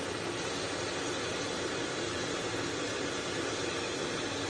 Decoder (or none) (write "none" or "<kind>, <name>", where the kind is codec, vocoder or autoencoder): none